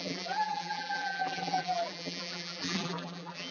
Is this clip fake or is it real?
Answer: fake